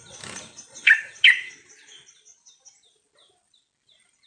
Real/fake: real